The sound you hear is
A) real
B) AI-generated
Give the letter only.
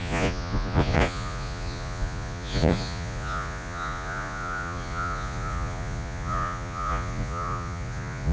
B